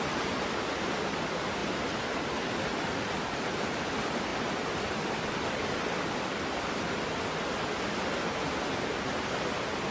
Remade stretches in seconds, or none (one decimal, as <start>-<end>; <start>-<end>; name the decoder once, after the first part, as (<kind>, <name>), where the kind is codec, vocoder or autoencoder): none